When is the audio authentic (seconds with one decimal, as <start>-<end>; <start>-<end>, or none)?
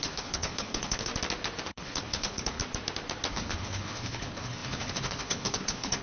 1.1-1.7; 2.6-3.3